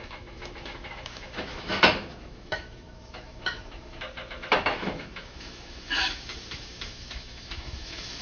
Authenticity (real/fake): fake